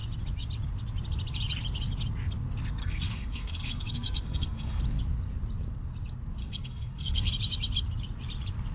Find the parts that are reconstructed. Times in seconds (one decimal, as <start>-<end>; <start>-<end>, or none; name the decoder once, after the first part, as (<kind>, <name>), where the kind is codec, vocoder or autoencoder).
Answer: 2.8-4.8 (codec, SNAC); 6.4-7.3